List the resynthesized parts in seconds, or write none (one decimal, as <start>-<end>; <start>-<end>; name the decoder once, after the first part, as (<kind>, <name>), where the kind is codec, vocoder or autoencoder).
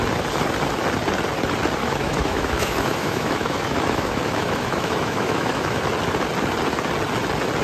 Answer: 1.8-5.8 (autoencoder, DAC-VAE)